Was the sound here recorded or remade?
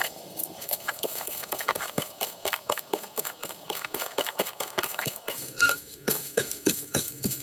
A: remade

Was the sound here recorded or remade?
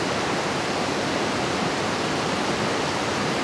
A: remade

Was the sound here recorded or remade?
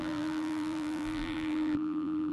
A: remade